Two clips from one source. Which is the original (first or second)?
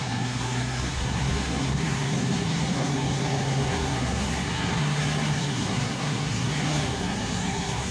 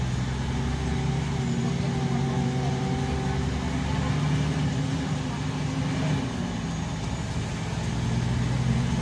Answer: second